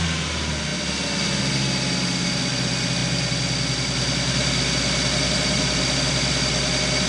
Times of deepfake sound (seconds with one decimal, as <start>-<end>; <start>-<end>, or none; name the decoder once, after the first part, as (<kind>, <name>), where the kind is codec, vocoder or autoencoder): 3.0-7.1 (vocoder, BigVGAN v2)